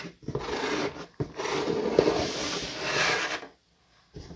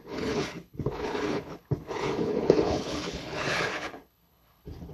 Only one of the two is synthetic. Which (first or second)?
second